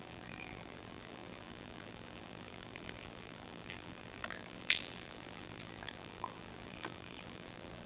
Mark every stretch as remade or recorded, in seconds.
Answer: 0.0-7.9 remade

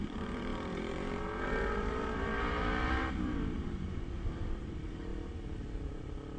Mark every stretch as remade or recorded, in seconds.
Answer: 0.0-5.1 remade; 5.1-5.9 recorded; 5.9-6.4 remade